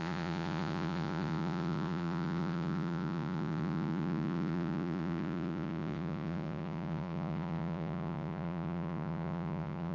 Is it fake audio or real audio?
fake